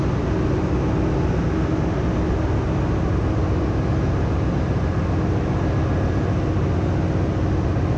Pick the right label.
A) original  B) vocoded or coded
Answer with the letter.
A